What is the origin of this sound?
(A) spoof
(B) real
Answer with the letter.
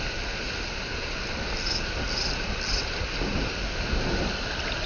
B